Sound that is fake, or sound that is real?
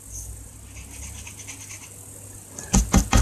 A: real